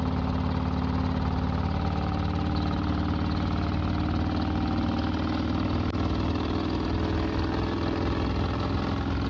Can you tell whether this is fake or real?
real